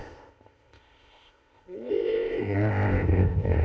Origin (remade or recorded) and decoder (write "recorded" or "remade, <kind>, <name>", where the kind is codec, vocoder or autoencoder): remade, codec, ZipCodec